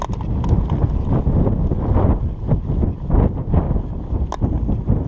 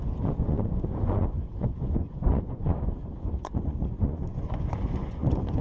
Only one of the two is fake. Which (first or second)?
second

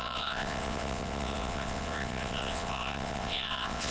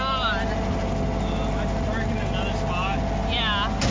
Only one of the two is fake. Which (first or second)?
first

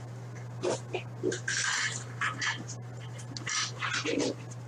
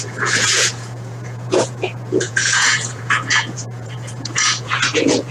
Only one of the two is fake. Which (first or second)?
second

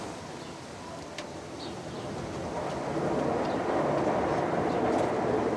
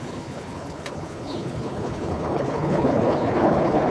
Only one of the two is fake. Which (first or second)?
second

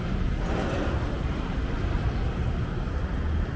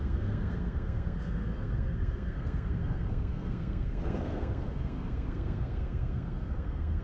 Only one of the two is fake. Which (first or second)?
second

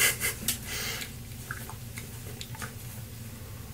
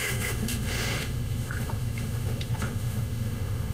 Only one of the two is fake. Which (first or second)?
second